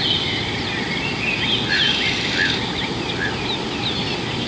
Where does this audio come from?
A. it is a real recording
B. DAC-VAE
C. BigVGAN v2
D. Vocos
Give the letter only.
A